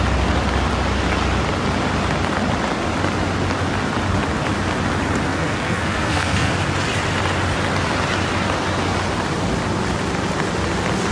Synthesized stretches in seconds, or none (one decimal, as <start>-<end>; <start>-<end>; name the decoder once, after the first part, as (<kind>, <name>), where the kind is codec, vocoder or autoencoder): 5.3-6.5 (codec, SNAC)